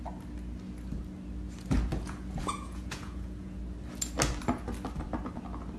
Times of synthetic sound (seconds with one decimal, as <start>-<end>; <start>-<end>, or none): 1.9-3.6